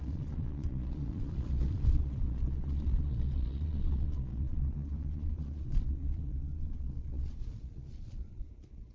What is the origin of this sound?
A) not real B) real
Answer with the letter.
A